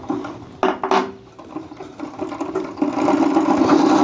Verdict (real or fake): real